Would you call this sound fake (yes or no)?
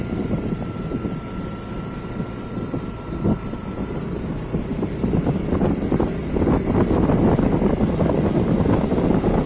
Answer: no